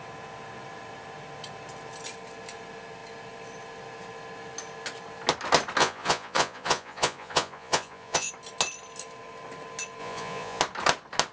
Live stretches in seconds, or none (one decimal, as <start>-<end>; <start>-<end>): 0.0-5.8; 8.3-10.0; 10.6-11.3